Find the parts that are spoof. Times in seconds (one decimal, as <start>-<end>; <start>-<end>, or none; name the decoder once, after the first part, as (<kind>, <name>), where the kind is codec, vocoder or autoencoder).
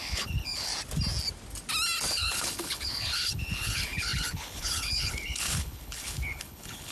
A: 0.0-0.7 (codec, HILCodec); 2.1-6.9